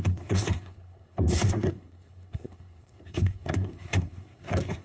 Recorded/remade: remade